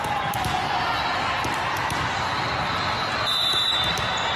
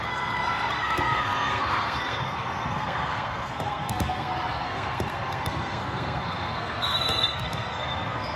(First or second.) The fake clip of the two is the second